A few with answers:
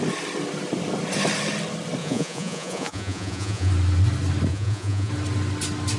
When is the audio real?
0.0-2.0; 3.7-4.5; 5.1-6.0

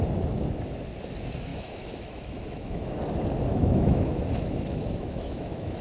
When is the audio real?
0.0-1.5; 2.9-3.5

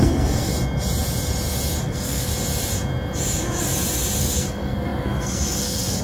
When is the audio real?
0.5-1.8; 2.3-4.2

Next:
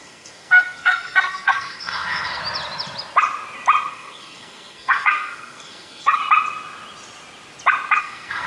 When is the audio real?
2.4-3.9; 6.2-8.0

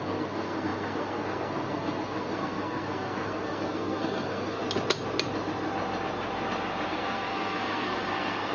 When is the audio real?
4.6-6.9

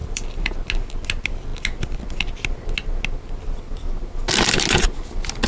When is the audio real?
0.5-5.5

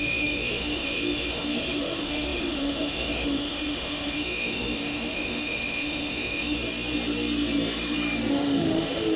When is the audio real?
6.6-8.3

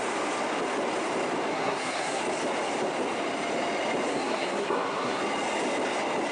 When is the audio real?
0.0-1.5; 2.2-4.1; 5.2-6.3